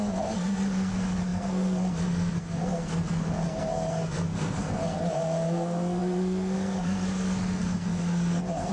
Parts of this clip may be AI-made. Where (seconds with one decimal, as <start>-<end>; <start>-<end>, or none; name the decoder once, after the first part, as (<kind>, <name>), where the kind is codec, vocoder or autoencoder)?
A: 0.0-8.7 (codec, SNAC)